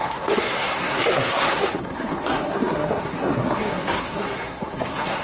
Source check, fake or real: fake